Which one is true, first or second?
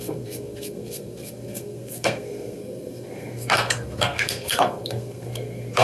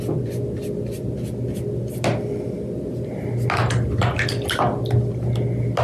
second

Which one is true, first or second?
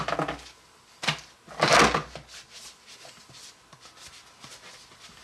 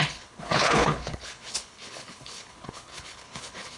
first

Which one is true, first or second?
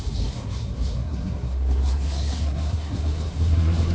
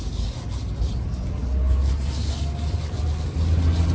second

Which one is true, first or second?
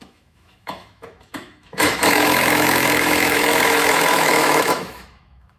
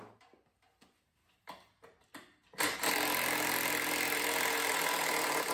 second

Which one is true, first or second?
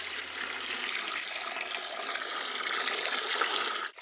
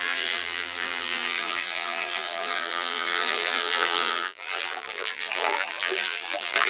first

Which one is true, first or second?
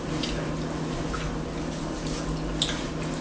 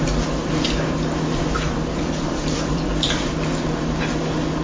first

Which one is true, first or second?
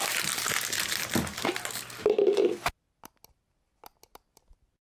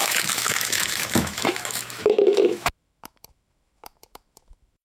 first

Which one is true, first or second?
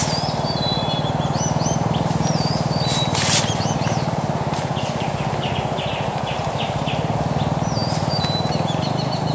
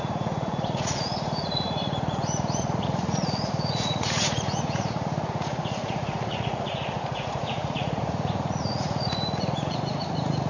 first